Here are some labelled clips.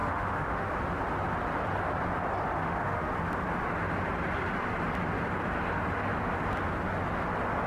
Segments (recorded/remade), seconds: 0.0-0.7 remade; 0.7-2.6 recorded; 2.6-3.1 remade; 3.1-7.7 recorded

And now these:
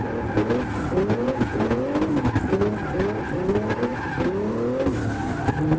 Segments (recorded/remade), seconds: 0.0-1.2 recorded; 1.2-1.8 remade; 1.8-5.8 recorded

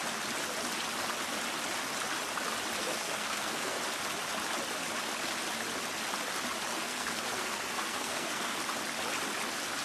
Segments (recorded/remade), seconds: 0.0-2.8 recorded; 2.8-3.8 remade; 3.8-6.7 recorded; 6.7-8.6 remade; 8.6-9.8 recorded

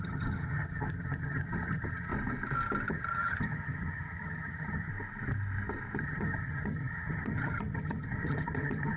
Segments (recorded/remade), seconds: 0.0-2.1 remade; 2.1-2.9 recorded; 2.9-4.9 remade; 4.9-6.0 recorded; 6.0-9.0 remade